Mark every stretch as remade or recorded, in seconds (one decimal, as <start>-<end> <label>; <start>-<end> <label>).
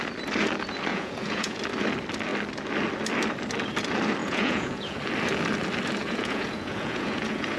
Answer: 0.0-0.9 recorded; 0.9-1.6 remade; 1.6-4.2 recorded; 4.2-5.0 remade; 5.0-6.0 recorded; 6.0-7.6 remade